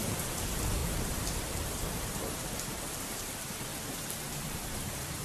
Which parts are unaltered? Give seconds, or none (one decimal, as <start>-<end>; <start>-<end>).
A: none